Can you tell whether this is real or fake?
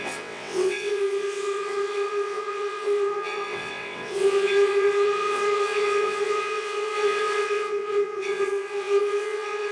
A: fake